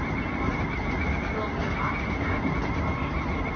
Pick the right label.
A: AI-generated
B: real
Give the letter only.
B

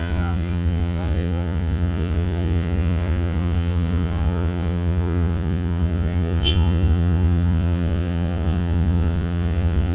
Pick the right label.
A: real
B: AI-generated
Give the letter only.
B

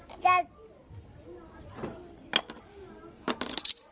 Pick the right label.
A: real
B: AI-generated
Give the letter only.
A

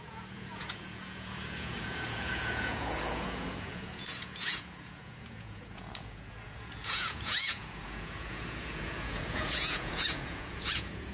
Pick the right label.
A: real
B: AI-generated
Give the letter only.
B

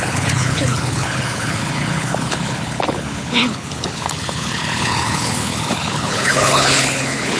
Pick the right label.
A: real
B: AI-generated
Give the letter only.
B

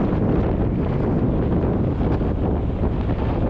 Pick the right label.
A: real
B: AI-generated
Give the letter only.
A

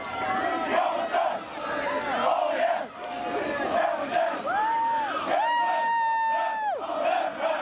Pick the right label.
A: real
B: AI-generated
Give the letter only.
A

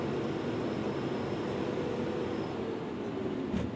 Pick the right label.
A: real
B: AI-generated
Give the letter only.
A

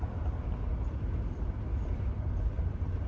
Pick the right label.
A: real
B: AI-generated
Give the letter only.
A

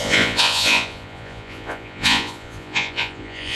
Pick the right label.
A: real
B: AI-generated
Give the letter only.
B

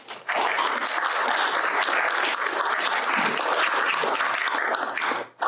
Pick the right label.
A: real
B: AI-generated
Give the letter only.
A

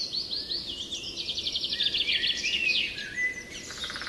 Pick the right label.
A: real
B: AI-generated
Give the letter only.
A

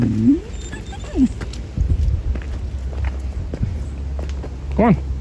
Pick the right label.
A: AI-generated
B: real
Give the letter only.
B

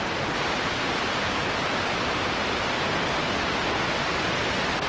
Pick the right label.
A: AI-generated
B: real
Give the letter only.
B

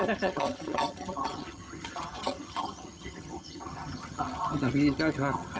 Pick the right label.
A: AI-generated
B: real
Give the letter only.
A